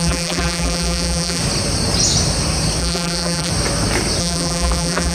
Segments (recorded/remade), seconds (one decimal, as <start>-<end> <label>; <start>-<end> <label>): 0.0-1.4 remade; 1.4-2.8 recorded; 2.8-3.5 remade; 3.5-4.2 recorded; 4.2-5.1 remade